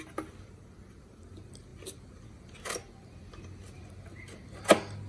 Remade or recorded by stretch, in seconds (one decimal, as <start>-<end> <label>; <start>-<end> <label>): 0.0-5.1 recorded